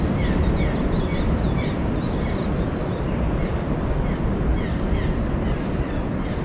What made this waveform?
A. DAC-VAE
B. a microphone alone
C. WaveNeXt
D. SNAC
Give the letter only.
B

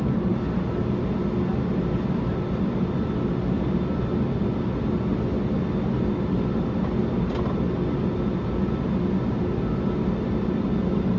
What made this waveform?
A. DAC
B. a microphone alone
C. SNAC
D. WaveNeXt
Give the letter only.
B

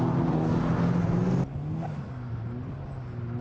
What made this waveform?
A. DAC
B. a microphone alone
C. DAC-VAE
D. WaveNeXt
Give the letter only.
B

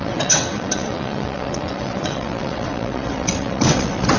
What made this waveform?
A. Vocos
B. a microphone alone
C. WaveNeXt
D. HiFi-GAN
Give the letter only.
C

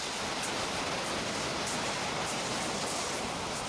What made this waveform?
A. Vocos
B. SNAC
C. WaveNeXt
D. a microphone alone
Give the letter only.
D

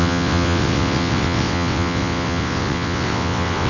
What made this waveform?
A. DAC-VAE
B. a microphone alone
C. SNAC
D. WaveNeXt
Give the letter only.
D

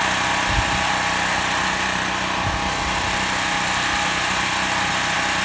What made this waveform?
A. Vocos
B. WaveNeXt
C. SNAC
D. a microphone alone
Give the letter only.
D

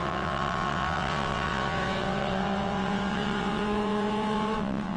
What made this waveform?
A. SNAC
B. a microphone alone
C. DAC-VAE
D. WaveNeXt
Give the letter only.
D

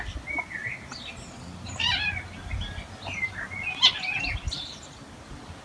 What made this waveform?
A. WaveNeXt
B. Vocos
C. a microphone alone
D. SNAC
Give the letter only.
C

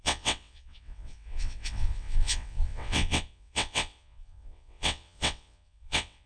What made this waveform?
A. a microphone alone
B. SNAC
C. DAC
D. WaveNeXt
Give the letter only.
D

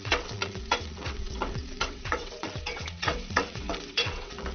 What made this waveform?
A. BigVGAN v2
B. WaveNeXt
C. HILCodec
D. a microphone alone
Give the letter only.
B